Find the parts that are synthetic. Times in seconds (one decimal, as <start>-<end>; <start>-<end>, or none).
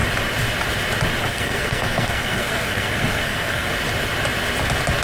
1.2-3.7